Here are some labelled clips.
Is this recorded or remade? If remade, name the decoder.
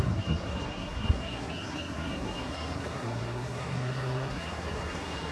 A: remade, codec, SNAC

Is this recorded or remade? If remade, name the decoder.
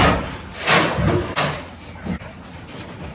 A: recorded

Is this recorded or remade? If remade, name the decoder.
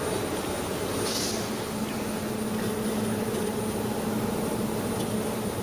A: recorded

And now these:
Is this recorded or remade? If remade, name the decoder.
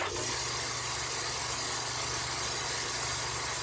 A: recorded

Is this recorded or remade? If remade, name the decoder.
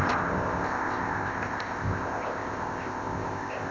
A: remade, codec, ZipCodec